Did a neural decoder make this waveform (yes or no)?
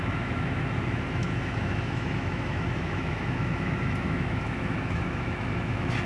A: yes